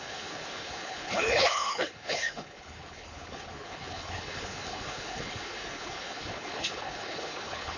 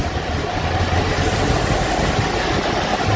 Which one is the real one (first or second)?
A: second